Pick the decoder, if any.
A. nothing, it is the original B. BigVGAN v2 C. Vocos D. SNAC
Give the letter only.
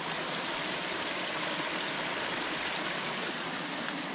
A